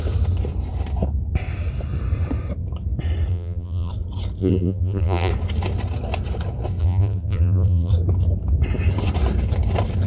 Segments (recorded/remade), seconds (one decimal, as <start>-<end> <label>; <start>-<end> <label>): 0.0-3.3 recorded; 3.3-3.9 remade; 3.9-4.4 recorded; 4.4-5.3 remade; 5.3-6.8 recorded; 6.8-7.9 remade; 7.9-10.1 recorded